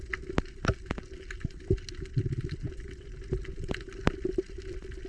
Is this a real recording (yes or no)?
yes